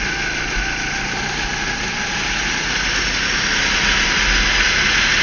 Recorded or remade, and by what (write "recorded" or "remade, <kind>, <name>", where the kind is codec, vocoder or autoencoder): recorded